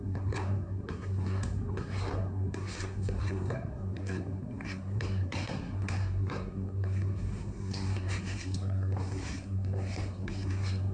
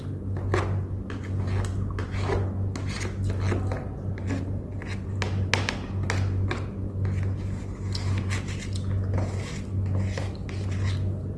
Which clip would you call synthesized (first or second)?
first